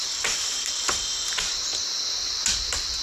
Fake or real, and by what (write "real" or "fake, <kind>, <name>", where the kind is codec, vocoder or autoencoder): real